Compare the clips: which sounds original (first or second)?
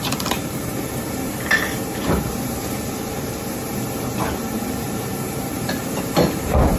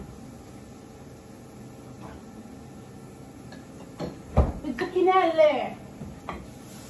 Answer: second